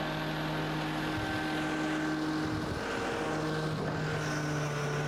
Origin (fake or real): real